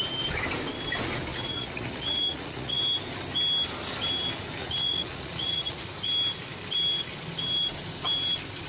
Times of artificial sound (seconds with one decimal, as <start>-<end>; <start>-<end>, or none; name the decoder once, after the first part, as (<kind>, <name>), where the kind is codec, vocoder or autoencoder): 1.3-2.8 (vocoder, Vocos); 4.6-5.8